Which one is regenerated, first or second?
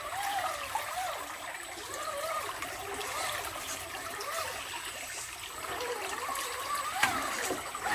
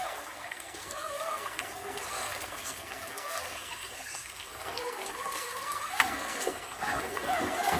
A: second